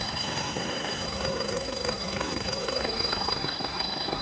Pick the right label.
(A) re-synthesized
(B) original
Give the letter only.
A